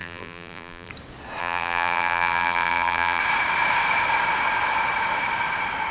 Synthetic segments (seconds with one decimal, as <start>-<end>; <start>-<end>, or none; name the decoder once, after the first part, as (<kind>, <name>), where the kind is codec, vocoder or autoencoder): 0.0-0.9 (vocoder, BigVGAN v2); 1.4-3.2